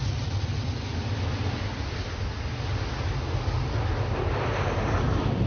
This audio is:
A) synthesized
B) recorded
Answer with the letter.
B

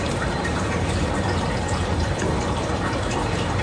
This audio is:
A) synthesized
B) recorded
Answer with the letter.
A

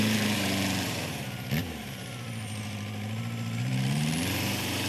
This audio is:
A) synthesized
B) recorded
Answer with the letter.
A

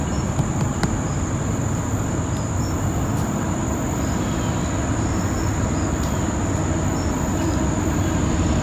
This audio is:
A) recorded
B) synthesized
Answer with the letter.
A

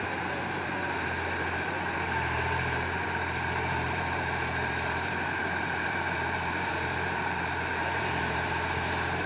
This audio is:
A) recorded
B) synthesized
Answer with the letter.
B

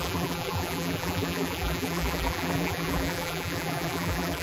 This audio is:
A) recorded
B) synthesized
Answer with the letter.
B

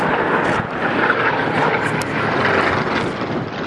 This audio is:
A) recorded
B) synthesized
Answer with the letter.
B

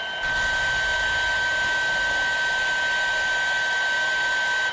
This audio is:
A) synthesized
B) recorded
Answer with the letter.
B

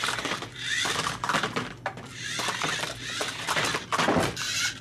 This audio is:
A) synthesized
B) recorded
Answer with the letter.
A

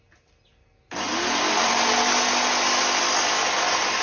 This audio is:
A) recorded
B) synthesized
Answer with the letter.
A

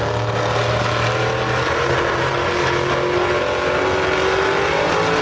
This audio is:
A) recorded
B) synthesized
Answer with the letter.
A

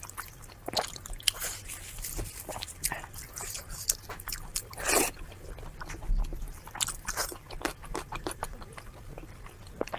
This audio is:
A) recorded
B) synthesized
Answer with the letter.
B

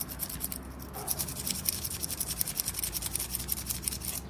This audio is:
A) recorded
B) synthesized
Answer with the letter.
A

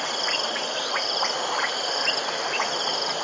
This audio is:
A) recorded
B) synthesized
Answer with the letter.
B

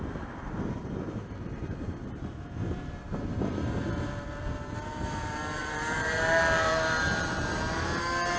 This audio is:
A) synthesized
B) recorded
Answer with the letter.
A